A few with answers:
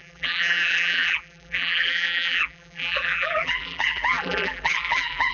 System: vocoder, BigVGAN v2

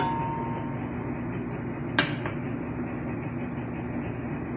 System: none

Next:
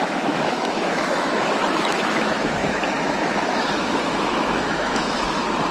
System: autoencoder, DAC-VAE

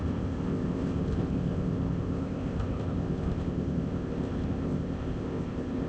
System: codec, ZipCodec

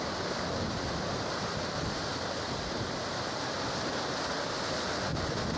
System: none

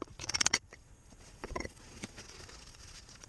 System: vocoder, Vocos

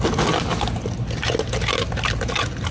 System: none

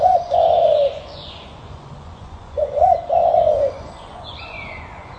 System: vocoder, Vocos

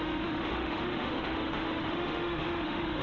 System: autoencoder, DAC-VAE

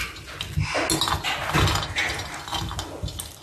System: none